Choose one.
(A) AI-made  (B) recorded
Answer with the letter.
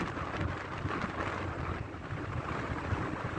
B